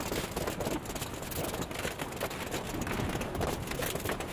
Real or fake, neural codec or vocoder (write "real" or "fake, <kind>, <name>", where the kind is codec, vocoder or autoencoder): real